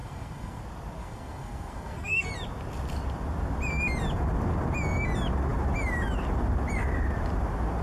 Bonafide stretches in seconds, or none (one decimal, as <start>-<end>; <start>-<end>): 0.6-1.0; 2.3-7.8